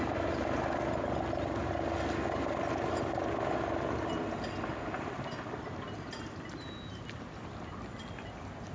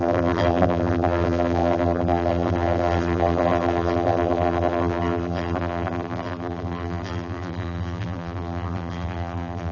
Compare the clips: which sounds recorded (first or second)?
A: first